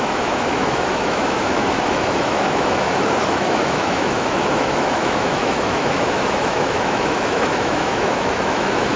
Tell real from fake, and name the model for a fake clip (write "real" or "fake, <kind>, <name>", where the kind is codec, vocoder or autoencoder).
fake, autoencoder, DAC-VAE